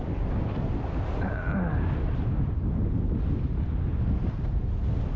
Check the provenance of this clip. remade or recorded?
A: recorded